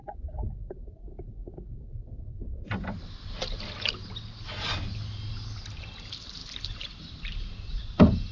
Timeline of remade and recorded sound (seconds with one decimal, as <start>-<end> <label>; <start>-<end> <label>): 0.0-0.7 recorded; 0.7-1.4 remade; 1.4-5.8 recorded; 5.8-8.3 remade